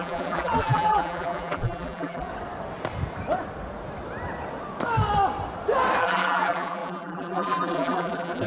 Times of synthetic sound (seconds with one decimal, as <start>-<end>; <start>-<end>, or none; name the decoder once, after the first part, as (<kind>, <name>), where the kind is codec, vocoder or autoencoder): 0.0-2.3 (vocoder, BigVGAN v2); 6.0-8.5